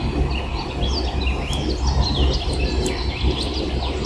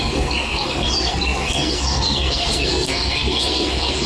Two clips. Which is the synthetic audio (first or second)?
second